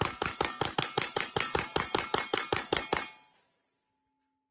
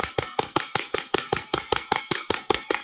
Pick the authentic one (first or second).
first